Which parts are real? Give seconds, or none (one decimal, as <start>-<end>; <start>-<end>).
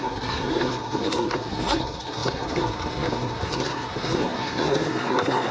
none